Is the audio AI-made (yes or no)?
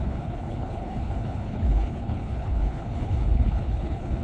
yes